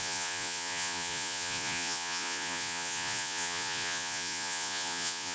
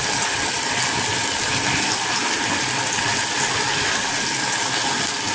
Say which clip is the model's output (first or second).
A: first